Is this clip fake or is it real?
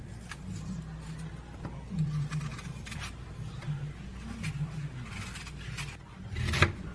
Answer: real